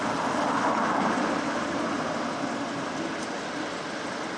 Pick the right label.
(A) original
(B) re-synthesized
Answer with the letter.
A